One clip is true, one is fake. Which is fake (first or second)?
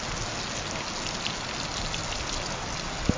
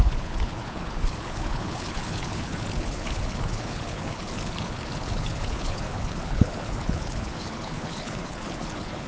second